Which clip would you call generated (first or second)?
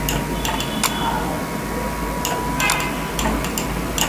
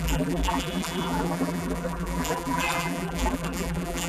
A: second